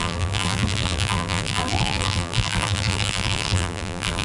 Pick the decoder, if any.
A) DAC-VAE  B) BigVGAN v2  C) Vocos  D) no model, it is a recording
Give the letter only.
B